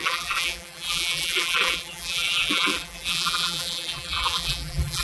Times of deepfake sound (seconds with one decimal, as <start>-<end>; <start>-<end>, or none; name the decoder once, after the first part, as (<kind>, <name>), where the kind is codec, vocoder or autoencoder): 0.0-5.0 (vocoder, BigVGAN v2)